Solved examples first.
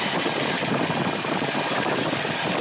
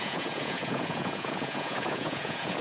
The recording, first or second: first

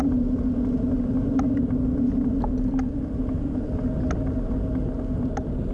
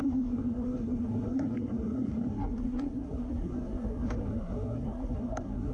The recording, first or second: first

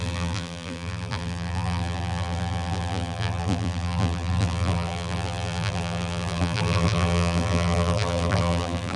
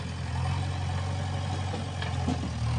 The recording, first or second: second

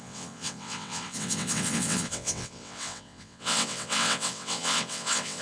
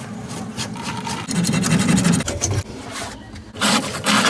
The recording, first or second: second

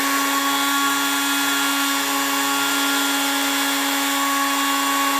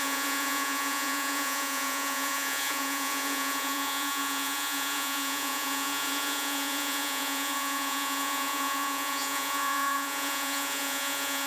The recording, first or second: first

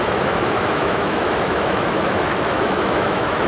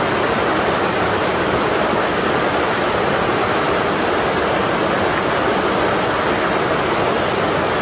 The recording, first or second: second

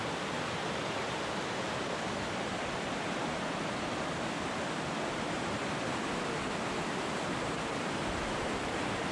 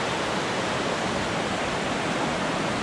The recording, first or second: second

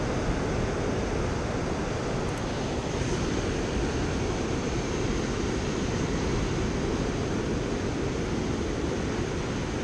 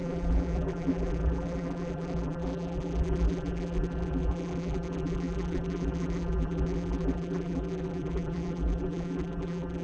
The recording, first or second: first